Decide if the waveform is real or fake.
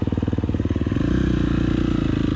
real